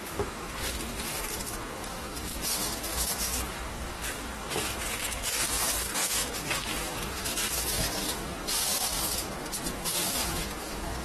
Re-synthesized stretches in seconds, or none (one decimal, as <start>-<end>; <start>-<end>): 0.0-11.0